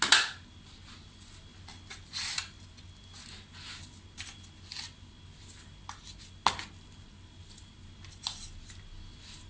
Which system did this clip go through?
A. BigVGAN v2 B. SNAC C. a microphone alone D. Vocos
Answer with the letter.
C